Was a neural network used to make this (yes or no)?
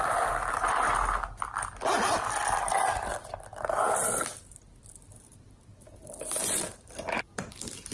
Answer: no